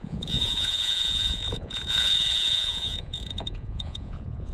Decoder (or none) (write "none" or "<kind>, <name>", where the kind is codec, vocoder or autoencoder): vocoder, Vocos